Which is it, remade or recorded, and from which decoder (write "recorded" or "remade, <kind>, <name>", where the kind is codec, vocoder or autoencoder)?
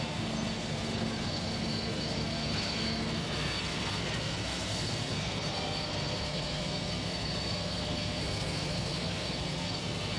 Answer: remade, codec, SNAC